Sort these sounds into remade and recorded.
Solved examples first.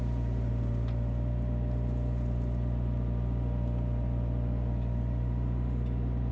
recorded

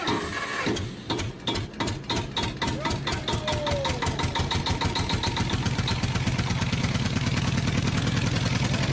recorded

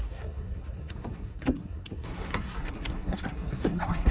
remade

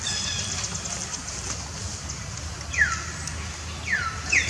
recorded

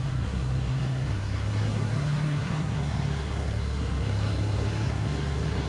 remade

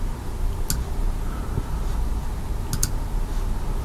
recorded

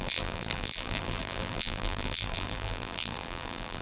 remade